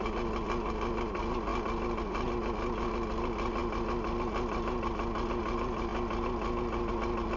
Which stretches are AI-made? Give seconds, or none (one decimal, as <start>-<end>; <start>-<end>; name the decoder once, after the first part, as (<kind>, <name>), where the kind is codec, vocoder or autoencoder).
none